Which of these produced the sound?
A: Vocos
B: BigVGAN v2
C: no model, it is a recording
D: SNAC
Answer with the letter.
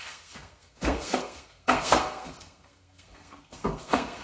D